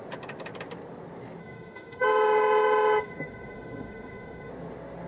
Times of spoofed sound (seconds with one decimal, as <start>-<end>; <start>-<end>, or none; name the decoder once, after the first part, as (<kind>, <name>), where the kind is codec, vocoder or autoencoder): 1.4-4.5 (autoencoder, DAC-VAE)